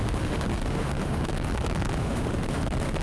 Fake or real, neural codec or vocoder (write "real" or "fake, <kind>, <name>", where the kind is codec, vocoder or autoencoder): fake, autoencoder, DAC-VAE